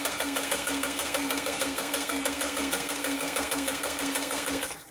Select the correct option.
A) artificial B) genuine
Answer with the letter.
A